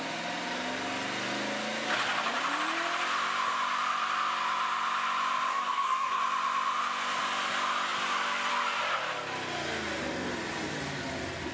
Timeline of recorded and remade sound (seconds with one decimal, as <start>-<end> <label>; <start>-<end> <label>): 0.0-5.5 recorded; 5.5-6.2 remade; 6.2-11.5 recorded